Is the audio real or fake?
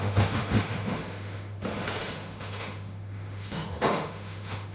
fake